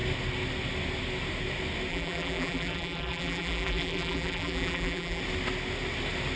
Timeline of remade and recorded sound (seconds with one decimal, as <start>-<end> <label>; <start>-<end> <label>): 0.0-1.9 recorded; 1.9-5.2 remade; 5.2-6.4 recorded